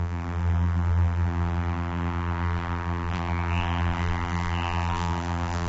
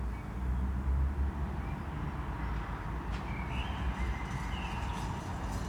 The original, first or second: second